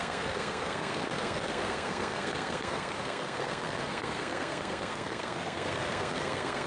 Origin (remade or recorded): remade